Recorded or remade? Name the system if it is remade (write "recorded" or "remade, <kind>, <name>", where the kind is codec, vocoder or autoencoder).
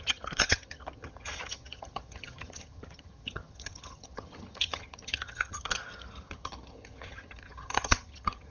remade, vocoder, HiFi-GAN